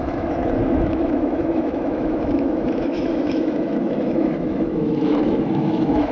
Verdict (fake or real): fake